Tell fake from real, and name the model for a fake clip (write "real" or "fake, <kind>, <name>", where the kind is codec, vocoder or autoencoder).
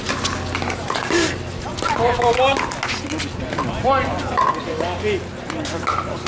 real